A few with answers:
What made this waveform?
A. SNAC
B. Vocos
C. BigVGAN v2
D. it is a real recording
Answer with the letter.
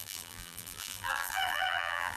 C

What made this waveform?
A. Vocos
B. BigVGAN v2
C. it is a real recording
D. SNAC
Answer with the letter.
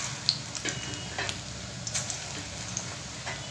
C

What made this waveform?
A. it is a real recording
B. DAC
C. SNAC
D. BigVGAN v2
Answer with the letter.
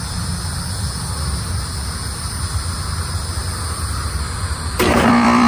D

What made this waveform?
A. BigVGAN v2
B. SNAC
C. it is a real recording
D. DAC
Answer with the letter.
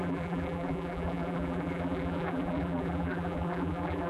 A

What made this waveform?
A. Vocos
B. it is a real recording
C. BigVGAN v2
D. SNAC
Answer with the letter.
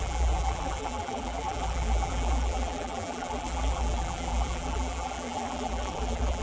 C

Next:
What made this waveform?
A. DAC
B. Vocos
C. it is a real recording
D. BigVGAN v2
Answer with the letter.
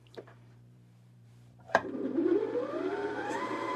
D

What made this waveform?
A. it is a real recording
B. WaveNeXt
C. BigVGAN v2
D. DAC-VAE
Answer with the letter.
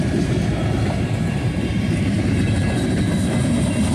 C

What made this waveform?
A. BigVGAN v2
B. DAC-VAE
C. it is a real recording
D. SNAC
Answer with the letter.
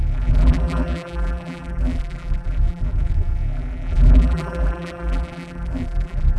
A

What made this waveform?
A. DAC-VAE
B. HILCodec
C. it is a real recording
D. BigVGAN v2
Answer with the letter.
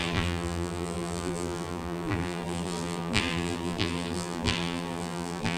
D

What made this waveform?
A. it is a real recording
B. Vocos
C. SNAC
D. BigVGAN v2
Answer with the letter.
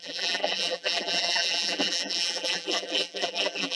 D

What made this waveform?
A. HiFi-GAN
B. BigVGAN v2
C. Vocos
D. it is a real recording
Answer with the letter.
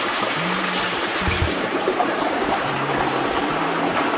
B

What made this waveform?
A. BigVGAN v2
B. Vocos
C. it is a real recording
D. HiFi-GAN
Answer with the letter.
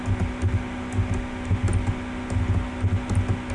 C